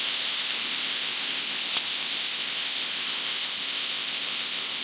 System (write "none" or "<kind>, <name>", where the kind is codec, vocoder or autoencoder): codec, ZipCodec